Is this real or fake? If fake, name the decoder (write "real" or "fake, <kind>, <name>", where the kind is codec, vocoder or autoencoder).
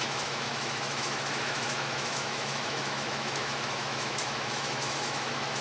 fake, autoencoder, DAC-VAE